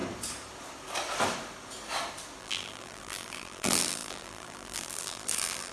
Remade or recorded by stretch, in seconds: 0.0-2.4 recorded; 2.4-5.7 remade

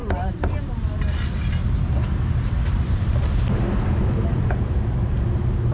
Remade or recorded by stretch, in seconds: 0.0-1.6 recorded; 1.6-4.0 remade; 4.0-5.7 recorded

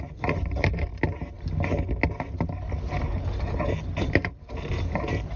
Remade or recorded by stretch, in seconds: 0.0-0.9 remade; 0.9-4.1 recorded; 4.1-5.4 remade

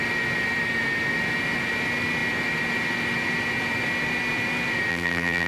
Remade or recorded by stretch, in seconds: 0.0-4.9 recorded; 4.9-5.5 remade

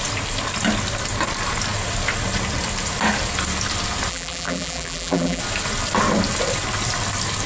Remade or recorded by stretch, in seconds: 0.0-4.1 recorded; 4.1-5.4 remade; 5.4-7.5 recorded

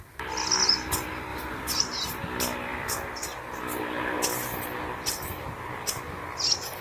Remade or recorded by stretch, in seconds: 0.0-6.8 recorded

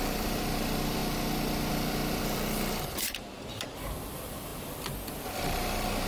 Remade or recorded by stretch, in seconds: 0.0-1.0 remade; 1.0-1.7 recorded; 1.7-4.5 remade; 4.5-6.1 recorded